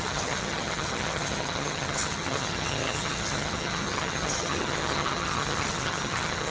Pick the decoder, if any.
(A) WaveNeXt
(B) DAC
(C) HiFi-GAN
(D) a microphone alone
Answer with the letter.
C